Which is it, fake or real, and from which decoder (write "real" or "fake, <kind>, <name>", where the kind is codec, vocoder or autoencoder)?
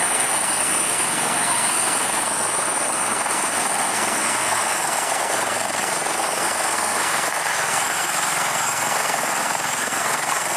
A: fake, codec, SNAC